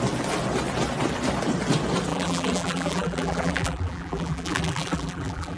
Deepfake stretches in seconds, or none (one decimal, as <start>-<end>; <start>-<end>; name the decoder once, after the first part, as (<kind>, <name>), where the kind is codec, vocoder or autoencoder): 2.1-5.6 (vocoder, BigVGAN v2)